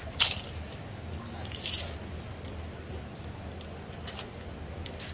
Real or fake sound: real